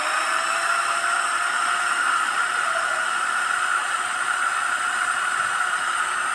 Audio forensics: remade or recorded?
remade